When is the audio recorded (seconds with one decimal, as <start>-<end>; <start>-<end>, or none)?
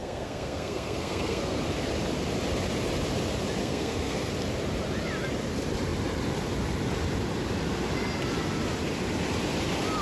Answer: 1.6-3.6; 4.3-10.0